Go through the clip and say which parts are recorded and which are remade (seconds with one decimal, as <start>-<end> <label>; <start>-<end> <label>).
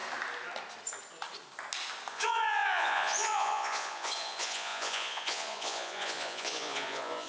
0.0-2.1 recorded; 2.1-7.3 remade